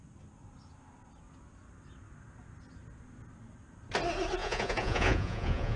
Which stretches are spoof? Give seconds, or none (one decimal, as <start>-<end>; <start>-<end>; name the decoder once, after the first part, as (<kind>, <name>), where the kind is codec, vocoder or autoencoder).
4.4-5.8 (vocoder, Vocos)